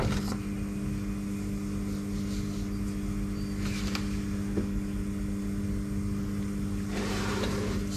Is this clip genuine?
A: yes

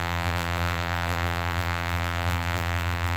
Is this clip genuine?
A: no